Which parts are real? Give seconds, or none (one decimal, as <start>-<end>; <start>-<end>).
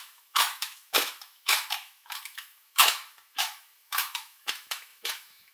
none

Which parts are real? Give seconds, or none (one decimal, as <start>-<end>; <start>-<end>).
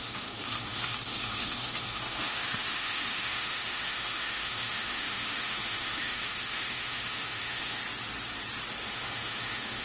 7.8-8.8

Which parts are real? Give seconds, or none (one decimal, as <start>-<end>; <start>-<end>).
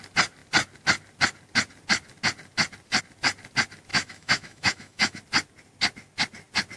0.0-3.9; 5.2-6.8